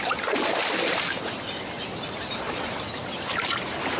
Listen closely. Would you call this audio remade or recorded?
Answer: remade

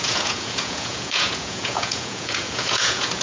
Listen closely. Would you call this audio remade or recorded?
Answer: remade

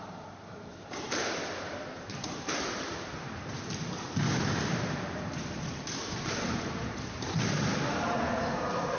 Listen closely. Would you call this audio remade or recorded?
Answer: remade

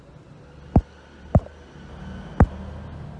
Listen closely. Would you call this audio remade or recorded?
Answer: recorded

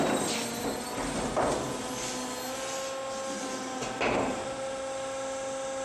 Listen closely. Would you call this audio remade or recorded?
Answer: recorded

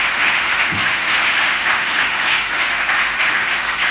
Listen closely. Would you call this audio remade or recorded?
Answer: remade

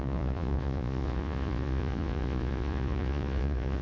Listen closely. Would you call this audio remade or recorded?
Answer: remade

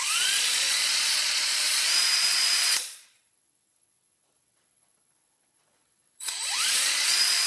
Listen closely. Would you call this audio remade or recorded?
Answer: remade